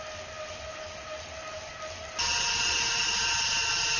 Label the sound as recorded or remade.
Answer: recorded